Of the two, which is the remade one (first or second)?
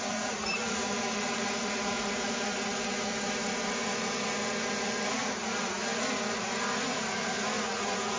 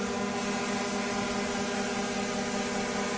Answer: first